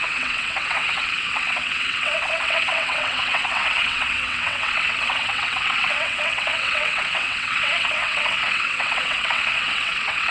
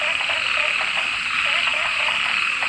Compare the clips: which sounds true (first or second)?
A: second